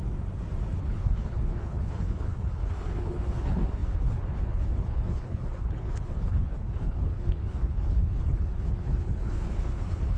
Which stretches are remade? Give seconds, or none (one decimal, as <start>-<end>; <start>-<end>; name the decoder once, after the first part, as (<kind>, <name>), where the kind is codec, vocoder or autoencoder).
0.8-10.2 (codec, HILCodec)